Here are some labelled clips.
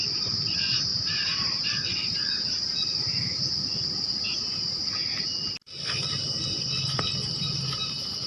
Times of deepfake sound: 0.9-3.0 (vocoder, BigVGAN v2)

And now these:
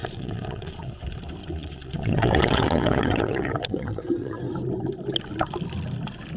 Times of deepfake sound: 0.0-0.9 (vocoder, WaveNeXt); 1.4-4.4

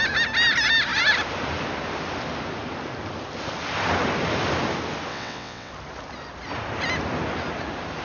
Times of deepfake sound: 5.1-5.7 (vocoder, WaveNeXt)